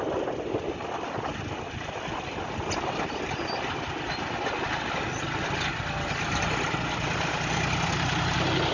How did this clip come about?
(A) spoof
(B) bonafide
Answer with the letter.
B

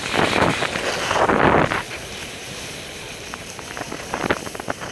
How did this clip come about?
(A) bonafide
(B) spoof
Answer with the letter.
A